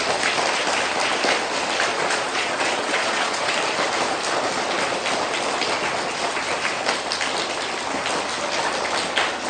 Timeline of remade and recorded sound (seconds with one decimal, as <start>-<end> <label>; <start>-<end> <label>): 0.0-1.9 recorded; 1.9-3.5 remade; 3.5-9.5 recorded